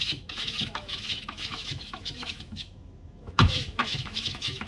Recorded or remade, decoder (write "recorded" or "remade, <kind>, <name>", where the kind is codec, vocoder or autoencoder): remade, autoencoder, DAC-VAE